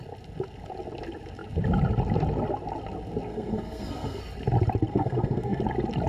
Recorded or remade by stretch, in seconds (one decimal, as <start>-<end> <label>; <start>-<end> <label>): 0.0-3.3 recorded; 3.3-4.2 remade; 4.2-4.9 recorded; 4.9-5.6 remade; 5.6-6.1 recorded